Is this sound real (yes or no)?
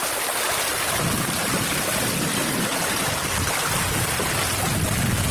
yes